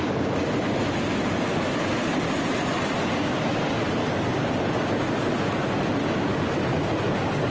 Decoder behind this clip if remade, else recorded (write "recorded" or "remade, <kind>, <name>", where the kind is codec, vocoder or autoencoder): recorded